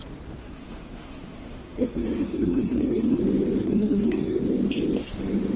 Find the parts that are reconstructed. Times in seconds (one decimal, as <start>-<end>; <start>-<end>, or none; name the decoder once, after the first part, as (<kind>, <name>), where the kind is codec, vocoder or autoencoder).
0.4-3.2 (codec, SNAC); 3.6-4.4